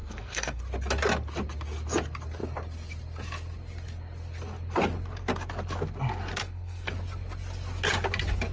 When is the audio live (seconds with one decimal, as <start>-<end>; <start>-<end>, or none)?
0.6-6.4; 6.9-8.5